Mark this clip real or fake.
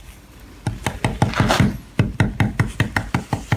real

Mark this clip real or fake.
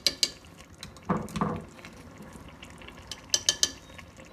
real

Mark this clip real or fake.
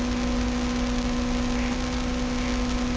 real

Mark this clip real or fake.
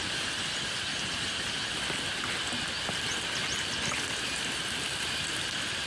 real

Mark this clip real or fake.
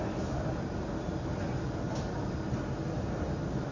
real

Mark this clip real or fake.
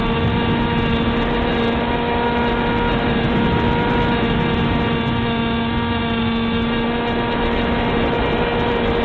real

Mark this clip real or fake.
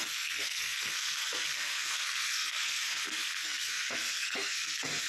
fake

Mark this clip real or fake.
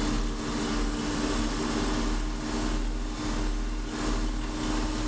real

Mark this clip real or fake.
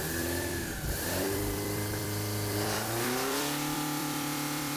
fake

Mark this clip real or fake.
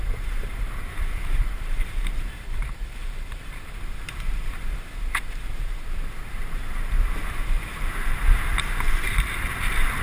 fake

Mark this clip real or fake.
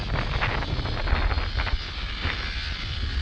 real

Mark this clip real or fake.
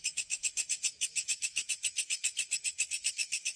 fake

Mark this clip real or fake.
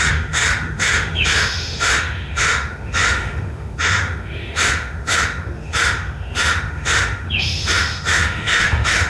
fake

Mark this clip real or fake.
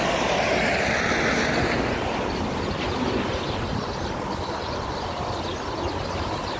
real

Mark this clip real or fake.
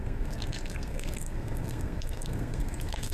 fake